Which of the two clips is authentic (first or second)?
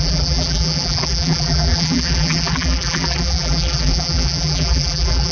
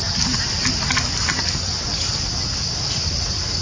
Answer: second